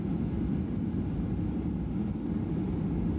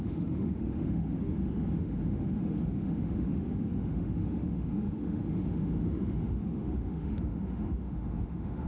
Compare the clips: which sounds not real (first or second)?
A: second